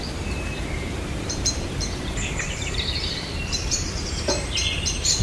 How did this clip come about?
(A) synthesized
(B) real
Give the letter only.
A